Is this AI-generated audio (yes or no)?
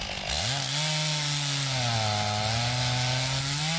no